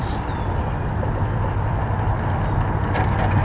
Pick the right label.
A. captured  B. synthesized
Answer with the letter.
A